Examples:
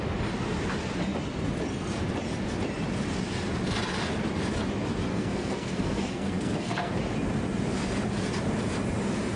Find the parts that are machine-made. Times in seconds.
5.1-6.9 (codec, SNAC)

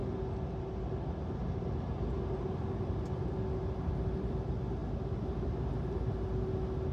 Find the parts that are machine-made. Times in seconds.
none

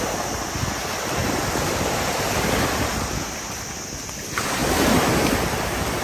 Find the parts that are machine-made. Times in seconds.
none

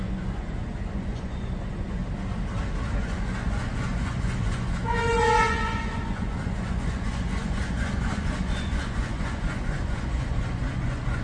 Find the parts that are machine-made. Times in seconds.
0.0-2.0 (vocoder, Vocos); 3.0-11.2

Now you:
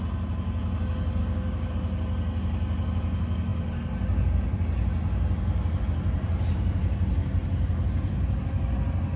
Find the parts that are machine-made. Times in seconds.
1.2-1.7 (codec, DAC)

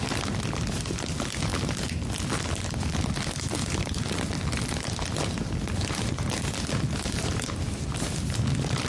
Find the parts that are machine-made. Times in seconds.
none